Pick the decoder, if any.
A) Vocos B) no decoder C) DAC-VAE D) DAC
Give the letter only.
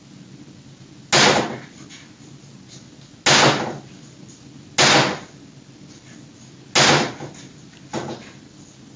B